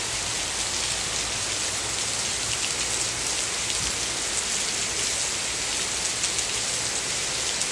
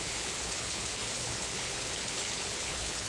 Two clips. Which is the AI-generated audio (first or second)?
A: second